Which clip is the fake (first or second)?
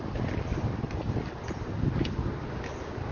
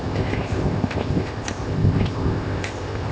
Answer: second